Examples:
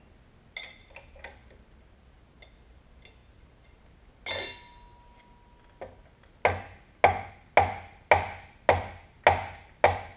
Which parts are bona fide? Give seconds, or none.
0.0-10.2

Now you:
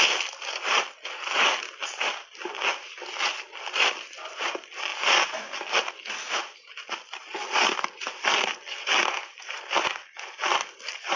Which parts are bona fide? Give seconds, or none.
0.0-11.2

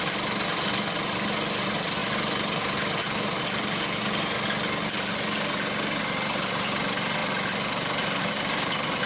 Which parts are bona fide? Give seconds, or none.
0.0-2.0; 3.4-9.1

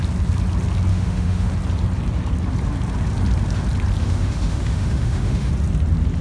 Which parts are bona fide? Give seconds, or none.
0.0-0.9; 1.5-4.0; 5.5-6.2

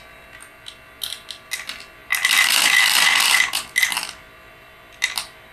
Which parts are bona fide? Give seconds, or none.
0.0-5.5

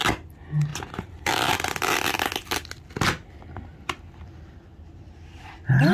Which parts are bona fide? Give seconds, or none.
0.0-0.7; 1.5-3.7; 4.6-5.9